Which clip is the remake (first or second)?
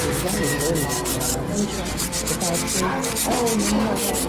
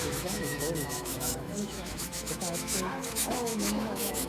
second